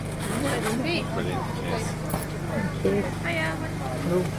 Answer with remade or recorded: recorded